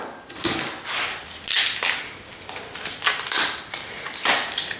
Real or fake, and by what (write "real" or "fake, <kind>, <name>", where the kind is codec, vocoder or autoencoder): real